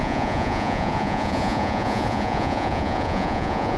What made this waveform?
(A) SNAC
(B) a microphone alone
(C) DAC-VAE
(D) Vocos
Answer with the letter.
D